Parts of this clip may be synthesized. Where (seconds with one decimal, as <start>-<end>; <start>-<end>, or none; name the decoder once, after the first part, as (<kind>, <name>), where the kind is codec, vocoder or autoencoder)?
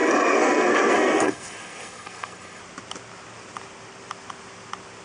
0.0-2.6 (codec, SNAC)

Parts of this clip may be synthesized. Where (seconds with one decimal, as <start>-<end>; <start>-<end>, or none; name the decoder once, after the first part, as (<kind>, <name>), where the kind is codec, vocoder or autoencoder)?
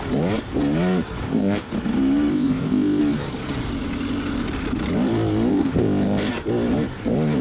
1.2-1.7 (codec, ZipCodec); 2.3-3.0; 5.5-6.3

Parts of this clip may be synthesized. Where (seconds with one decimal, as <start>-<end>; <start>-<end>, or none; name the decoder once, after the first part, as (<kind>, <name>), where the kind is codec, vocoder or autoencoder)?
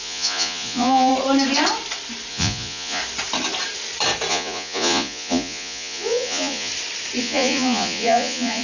0.0-1.1 (vocoder, Vocos); 2.3-3.0; 4.3-6.7; 7.2-8.6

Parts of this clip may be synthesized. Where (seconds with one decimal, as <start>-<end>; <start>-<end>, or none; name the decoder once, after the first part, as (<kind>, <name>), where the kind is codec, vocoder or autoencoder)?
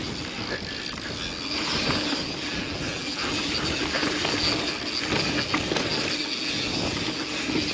2.5-3.3 (vocoder, BigVGAN v2)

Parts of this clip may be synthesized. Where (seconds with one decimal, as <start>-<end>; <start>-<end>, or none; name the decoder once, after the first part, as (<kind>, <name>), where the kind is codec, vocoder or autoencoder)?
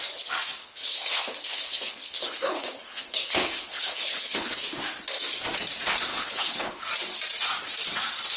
0.6-4.6 (codec, HILCodec); 6.1-6.8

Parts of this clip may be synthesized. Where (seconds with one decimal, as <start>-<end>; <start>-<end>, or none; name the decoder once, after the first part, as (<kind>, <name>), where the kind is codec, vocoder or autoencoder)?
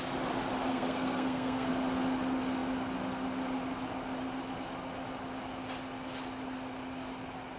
0.7-1.7 (codec, SNAC)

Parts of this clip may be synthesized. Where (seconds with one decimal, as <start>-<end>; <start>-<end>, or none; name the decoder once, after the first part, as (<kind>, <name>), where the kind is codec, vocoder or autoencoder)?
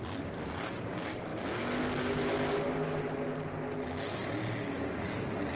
none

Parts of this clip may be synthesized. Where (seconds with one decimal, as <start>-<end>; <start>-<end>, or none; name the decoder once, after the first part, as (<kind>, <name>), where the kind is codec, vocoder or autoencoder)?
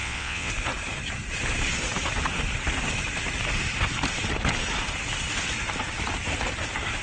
0.0-0.5 (vocoder, WaveNeXt)